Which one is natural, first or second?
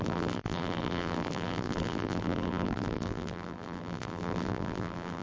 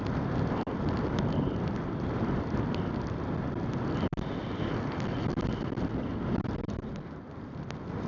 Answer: second